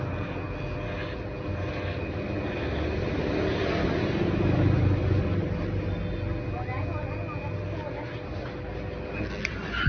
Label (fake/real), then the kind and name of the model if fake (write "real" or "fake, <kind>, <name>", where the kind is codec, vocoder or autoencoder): real